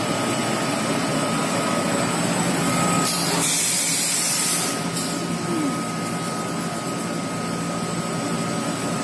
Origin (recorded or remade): recorded